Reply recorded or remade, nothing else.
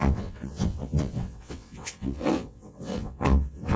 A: remade